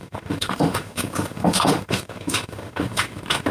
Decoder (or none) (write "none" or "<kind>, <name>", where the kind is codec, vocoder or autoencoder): autoencoder, DAC-VAE